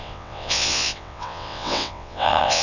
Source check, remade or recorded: remade